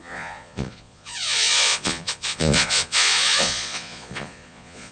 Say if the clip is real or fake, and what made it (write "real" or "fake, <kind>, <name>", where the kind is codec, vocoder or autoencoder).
fake, vocoder, Vocos